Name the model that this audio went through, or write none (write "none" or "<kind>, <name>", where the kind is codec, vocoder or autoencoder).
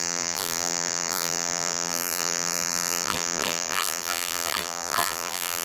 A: vocoder, BigVGAN v2